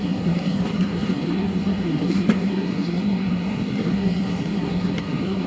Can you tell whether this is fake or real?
fake